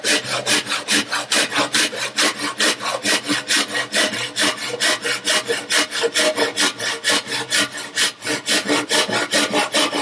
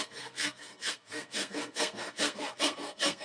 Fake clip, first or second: second